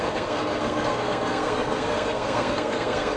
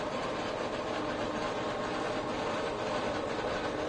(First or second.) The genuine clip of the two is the second